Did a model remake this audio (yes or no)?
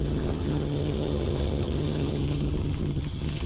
yes